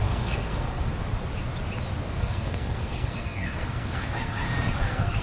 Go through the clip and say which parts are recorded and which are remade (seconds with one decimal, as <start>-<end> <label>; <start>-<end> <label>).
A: 0.0-0.9 remade; 0.9-2.1 recorded; 2.1-5.2 remade